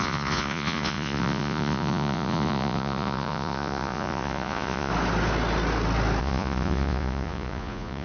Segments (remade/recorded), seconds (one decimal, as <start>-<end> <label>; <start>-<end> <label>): 0.0-4.9 remade; 4.9-6.2 recorded; 6.2-8.0 remade